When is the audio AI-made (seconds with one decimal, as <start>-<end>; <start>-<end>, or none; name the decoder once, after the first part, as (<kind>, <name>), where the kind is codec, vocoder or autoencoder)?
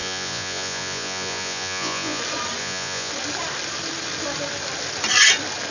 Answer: 0.0-2.2 (vocoder, Vocos); 2.6-3.1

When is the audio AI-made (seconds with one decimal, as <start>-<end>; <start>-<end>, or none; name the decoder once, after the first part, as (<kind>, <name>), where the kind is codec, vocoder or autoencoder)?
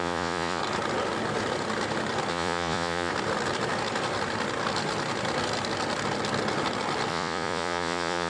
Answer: 0.0-0.6 (vocoder, Vocos); 2.3-3.1; 7.1-8.3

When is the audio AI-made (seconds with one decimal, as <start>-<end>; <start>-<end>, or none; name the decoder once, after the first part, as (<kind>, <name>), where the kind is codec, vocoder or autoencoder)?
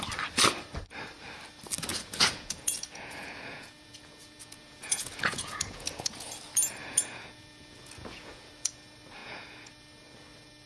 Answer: 1.9-6.3 (vocoder, Vocos); 6.8-8.7; 9.2-9.7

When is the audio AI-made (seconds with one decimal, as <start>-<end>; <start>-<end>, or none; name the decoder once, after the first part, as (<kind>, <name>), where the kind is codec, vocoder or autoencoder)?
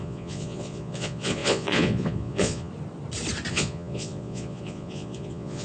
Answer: 0.0-2.7 (vocoder, Vocos); 3.5-5.6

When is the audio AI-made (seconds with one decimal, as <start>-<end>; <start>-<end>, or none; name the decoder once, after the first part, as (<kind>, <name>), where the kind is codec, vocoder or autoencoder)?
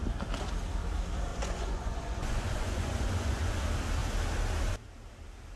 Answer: 1.3-3.6 (vocoder, Vocos)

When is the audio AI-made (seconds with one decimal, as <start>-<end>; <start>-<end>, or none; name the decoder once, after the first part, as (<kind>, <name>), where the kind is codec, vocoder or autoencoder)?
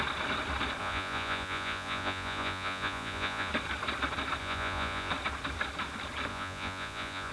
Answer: 0.8-3.5 (vocoder, Vocos); 4.4-5.1; 6.3-7.3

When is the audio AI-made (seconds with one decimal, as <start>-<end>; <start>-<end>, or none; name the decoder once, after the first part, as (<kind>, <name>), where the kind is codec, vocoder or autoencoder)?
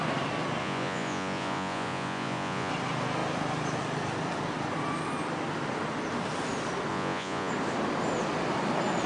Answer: 0.6-2.7 (vocoder, Vocos); 6.9-7.5